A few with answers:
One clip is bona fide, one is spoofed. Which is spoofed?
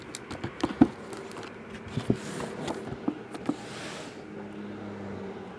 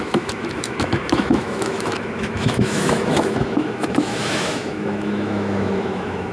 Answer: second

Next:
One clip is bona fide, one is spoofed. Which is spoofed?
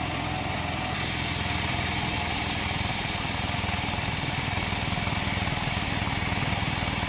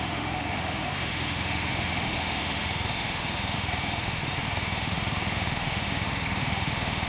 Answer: second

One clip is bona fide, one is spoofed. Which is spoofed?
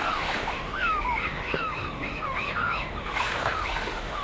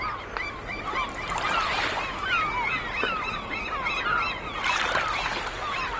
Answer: first